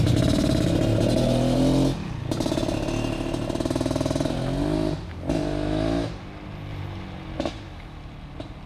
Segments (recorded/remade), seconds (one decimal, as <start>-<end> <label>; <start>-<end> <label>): 0.0-8.7 recorded